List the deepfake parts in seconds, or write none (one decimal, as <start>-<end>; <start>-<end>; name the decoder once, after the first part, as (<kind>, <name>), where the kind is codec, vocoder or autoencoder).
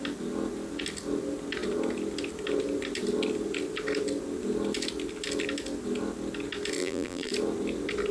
6.8-7.3 (vocoder, BigVGAN v2)